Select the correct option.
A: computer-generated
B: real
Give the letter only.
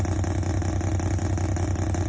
B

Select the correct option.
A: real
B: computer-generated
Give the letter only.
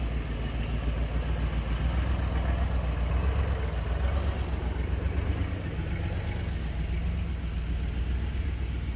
A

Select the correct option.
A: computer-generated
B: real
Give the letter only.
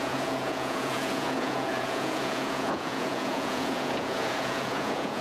A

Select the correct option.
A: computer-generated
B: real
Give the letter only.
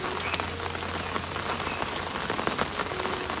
B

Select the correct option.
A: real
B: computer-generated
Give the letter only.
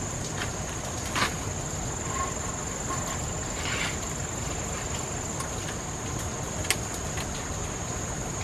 A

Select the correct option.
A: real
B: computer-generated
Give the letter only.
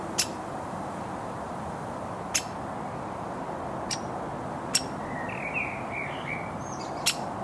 A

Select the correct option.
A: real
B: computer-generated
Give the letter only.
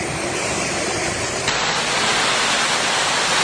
A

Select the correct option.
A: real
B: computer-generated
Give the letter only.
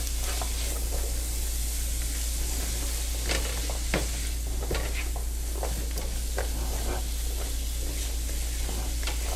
A